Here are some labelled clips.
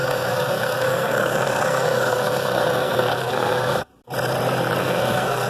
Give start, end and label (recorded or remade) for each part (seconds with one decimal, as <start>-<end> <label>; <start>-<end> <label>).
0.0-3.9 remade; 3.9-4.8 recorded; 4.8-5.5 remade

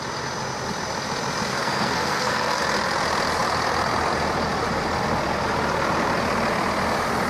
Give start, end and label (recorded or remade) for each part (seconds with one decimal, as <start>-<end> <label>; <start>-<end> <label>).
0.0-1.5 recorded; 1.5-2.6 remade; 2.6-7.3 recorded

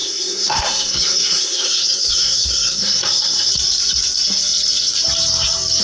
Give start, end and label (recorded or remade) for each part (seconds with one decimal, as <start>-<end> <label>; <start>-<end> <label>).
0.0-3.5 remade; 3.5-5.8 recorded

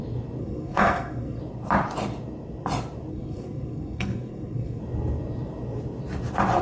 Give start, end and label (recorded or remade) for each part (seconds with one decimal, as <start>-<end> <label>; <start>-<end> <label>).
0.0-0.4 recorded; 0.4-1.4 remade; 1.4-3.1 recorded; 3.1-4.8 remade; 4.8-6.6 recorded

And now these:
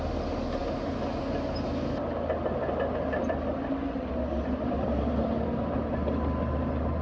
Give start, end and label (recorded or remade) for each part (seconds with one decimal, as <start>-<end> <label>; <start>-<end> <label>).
0.0-7.0 recorded

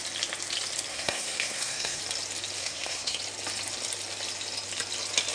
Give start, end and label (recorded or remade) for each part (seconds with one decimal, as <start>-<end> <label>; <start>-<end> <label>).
0.0-0.9 recorded; 0.9-2.0 remade; 2.0-2.6 recorded; 2.6-3.2 remade; 3.2-5.3 recorded

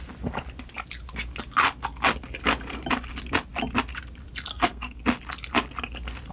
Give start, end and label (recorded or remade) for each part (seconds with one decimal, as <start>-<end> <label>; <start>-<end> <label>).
0.0-4.5 recorded; 4.5-5.0 remade; 5.0-6.3 recorded

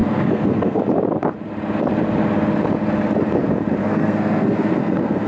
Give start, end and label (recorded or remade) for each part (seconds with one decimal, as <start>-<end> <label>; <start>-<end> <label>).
0.0-0.8 remade; 0.8-3.8 recorded; 3.8-5.3 remade